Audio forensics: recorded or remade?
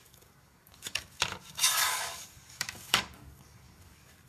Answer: remade